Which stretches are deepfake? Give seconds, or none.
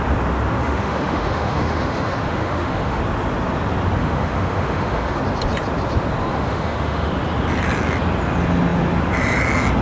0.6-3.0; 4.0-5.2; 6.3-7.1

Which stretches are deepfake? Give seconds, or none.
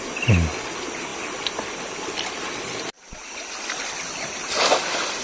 none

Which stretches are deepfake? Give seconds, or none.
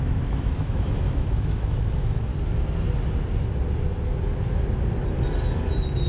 0.0-2.3